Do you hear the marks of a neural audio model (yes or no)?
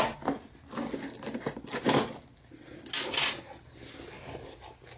no